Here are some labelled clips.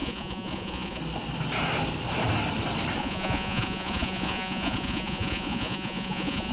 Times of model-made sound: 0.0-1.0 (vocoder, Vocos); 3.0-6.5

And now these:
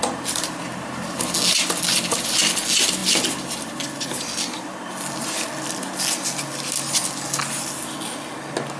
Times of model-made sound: none

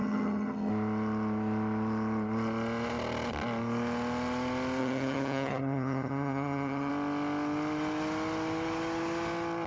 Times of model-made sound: 0.0-0.7 (vocoder, HiFi-GAN); 4.8-6.9

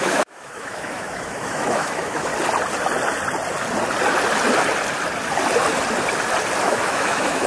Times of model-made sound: 0.0-2.3 (autoencoder, DAC-VAE); 6.6-7.5

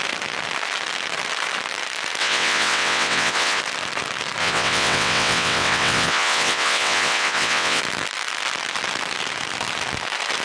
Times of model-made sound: 2.2-3.6 (vocoder, WaveNeXt); 4.4-7.8

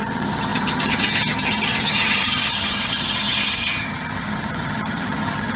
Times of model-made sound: 0.0-5.6 (vocoder, HiFi-GAN)

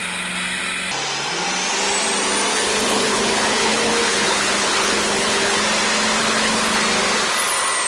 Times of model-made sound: 2.5-5.6 (codec, HILCodec); 6.2-6.8

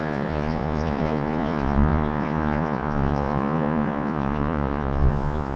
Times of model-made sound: 0.0-5.6 (vocoder, Vocos)